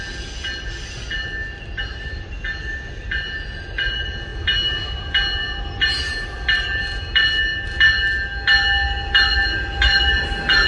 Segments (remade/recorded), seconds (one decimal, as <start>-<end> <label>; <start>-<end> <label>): 0.0-10.7 recorded